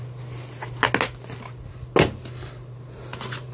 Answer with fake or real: real